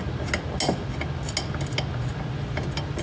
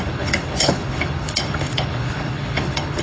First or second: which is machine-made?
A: second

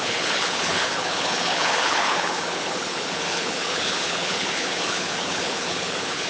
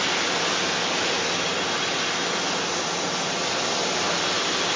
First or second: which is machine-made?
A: first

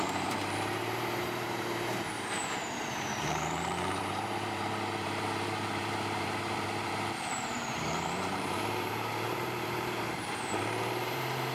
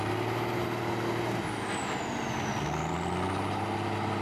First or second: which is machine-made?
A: first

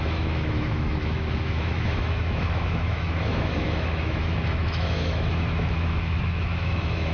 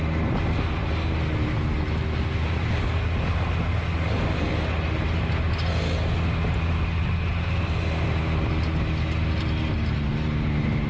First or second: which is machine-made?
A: first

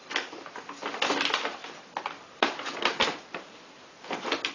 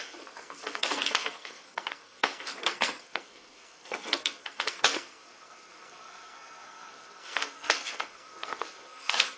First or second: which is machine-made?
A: second